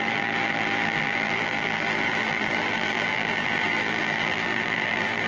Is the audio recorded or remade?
remade